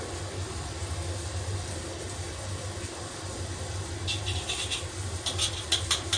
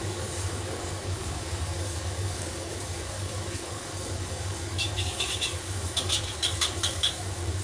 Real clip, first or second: first